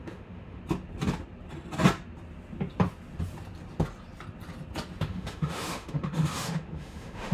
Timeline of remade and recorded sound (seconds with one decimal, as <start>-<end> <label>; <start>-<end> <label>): 0.0-0.6 remade; 0.6-5.0 recorded; 5.0-7.3 remade

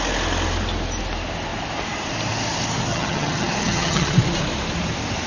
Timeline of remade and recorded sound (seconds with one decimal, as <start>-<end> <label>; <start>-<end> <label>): 0.0-2.9 recorded; 2.9-4.1 remade; 4.1-5.3 recorded

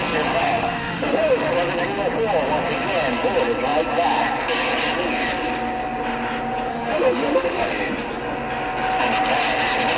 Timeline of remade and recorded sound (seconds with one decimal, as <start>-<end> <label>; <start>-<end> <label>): 0.0-0.4 recorded; 0.4-1.5 remade; 1.5-6.7 recorded; 6.7-7.7 remade; 7.7-10.0 recorded